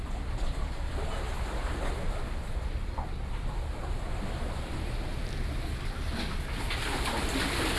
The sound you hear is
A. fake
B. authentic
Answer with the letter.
B